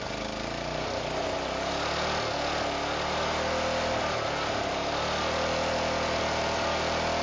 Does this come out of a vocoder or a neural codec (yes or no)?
no